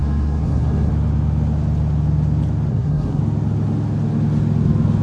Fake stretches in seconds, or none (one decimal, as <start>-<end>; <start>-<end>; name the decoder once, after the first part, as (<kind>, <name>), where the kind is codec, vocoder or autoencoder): 0.0-0.9 (codec, SNAC); 2.7-3.2